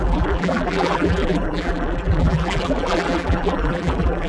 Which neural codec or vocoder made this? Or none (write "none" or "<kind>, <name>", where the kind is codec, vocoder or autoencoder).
vocoder, BigVGAN v2